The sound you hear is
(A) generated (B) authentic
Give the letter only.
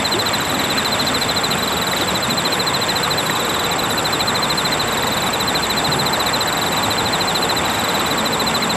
B